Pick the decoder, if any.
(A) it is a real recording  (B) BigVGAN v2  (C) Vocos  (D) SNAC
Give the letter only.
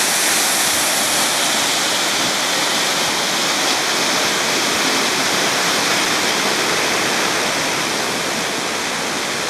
A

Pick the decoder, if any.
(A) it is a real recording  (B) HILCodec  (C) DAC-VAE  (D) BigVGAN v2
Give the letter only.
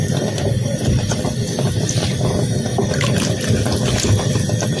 D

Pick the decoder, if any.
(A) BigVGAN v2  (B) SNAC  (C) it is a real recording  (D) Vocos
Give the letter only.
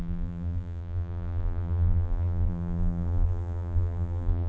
A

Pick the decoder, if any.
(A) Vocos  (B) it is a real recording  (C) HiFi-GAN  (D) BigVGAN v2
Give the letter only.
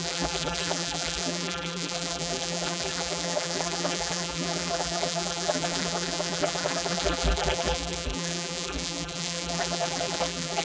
D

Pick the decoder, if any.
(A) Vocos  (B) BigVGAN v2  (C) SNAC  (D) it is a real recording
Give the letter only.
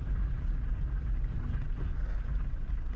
D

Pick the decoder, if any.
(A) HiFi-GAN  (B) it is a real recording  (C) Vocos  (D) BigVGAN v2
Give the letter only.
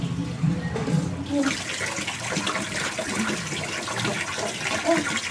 B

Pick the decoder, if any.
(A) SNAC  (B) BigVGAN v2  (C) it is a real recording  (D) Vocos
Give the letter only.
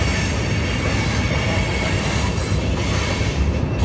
C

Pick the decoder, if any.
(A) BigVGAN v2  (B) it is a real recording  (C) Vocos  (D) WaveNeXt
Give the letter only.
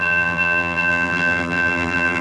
A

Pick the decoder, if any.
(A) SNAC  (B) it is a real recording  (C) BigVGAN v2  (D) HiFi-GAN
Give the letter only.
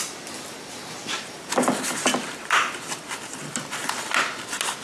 B